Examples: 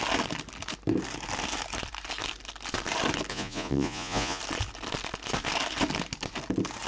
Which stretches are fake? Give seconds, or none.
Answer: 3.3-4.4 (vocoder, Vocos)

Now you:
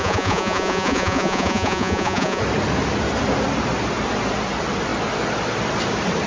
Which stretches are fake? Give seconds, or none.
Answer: 0.0-2.4 (vocoder, Vocos)

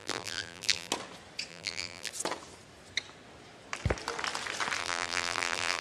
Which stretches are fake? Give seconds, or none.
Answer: 0.0-0.9 (vocoder, BigVGAN v2); 1.5-2.1; 4.8-5.8

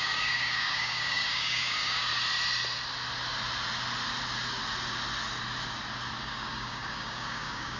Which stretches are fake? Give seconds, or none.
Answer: 0.0-2.1 (codec, DAC); 6.2-7.8

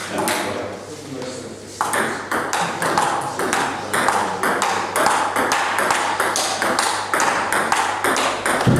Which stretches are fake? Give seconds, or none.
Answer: none